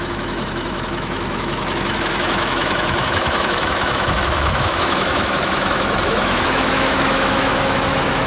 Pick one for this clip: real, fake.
fake